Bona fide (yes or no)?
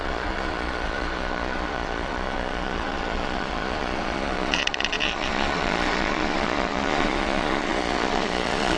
no